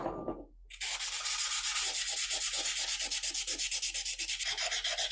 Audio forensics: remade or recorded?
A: recorded